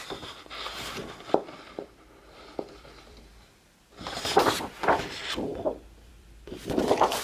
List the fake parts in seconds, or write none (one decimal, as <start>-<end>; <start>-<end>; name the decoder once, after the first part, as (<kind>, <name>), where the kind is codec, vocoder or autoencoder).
0.0-3.3 (vocoder, BigVGAN v2); 4.1-5.5; 6.1-7.2